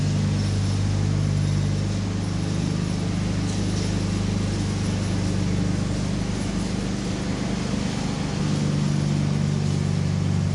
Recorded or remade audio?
recorded